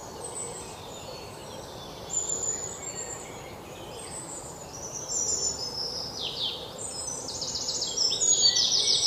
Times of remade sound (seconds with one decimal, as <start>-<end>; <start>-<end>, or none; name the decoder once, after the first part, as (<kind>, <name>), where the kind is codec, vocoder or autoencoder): 0.6-1.4 (vocoder, BigVGAN v2); 3.7-9.1